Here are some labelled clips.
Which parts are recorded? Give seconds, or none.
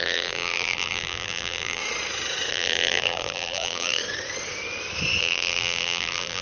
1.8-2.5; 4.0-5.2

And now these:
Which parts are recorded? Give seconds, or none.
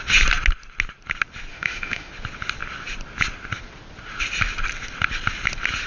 0.0-1.5; 2.1-5.9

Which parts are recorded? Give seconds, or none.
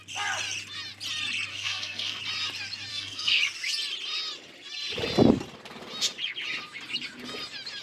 0.0-1.5; 2.2-2.9; 3.4-7.8